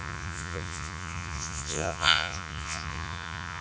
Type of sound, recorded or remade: remade